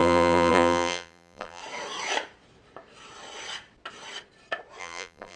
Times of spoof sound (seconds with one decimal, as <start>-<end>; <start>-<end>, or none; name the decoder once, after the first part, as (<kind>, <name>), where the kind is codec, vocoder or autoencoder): 0.0-1.6 (vocoder, BigVGAN v2); 4.8-5.4